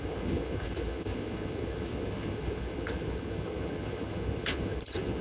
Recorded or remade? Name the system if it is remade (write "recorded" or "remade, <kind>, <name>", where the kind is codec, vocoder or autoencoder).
remade, vocoder, HiFi-GAN